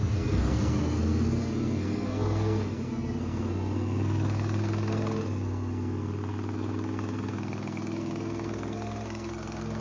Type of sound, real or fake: fake